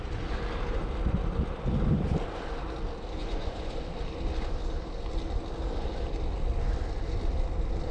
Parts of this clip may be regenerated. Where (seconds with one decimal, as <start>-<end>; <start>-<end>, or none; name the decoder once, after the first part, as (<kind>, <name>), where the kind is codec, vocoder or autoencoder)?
3.2-3.7 (vocoder, Vocos)

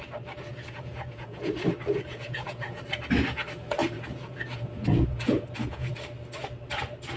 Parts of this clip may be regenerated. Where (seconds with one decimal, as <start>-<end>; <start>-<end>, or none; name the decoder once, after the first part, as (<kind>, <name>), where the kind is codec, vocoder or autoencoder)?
0.5-1.5 (vocoder, Vocos); 1.9-2.8; 3.8-5.9

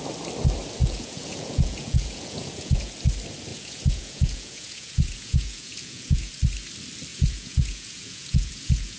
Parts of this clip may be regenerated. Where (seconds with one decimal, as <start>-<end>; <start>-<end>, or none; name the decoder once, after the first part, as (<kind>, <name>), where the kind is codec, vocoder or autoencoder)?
0.8-2.9 (vocoder, Vocos); 3.5-6.3; 7.1-9.0

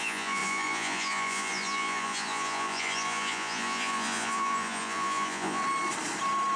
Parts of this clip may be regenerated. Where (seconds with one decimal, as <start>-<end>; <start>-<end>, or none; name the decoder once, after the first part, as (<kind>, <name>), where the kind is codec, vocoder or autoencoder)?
0.0-5.6 (vocoder, Vocos)